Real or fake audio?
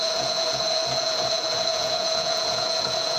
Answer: fake